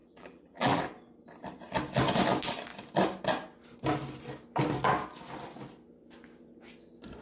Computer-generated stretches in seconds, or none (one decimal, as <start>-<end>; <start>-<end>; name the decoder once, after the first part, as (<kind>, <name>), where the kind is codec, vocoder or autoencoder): 0.0-0.8 (vocoder, BigVGAN v2)